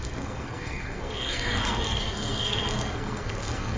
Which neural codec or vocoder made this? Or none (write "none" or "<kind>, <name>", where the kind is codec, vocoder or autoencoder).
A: codec, SNAC